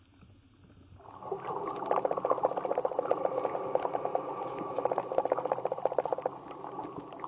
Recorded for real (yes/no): yes